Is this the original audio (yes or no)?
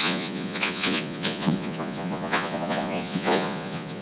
no